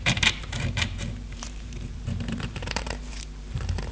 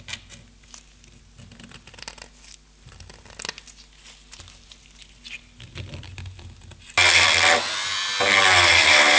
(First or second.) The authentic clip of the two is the second